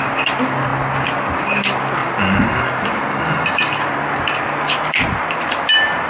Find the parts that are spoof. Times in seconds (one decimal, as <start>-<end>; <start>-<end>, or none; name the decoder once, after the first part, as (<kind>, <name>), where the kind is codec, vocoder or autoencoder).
2.0-3.7 (vocoder, BigVGAN v2)